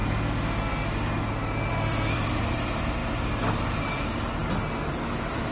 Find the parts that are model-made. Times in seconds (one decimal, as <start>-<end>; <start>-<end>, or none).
1.7-3.0; 3.9-4.4; 4.9-5.5